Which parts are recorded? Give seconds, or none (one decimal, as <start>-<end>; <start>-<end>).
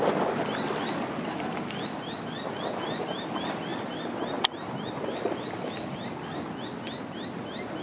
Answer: 0.0-7.8